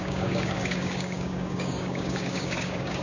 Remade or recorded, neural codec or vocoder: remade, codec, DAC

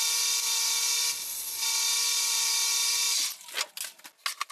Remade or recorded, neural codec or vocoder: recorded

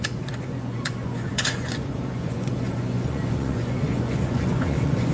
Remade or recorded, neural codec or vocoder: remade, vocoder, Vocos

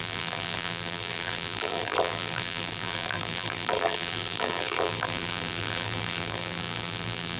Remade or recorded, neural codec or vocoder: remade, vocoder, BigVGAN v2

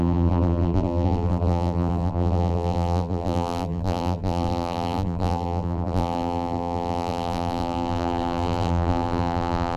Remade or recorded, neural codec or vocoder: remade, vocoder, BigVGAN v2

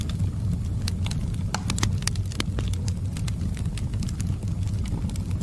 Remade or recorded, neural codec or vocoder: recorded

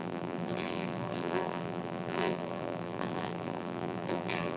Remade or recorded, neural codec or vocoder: remade, vocoder, BigVGAN v2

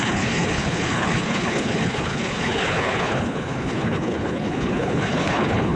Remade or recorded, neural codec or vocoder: remade, codec, HILCodec